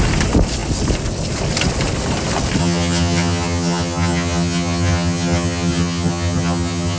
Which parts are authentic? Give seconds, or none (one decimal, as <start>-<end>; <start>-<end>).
0.0-2.6